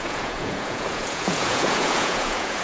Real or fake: fake